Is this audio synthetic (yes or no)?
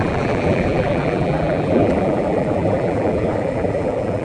yes